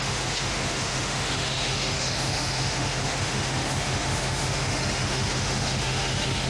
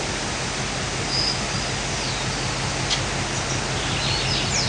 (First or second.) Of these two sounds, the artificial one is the first